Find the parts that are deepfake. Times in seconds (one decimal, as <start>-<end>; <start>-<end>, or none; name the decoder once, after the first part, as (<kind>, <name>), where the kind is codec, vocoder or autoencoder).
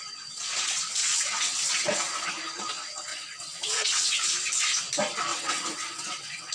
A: 1.0-2.3 (vocoder, WaveNeXt); 3.1-4.3; 5.3-6.5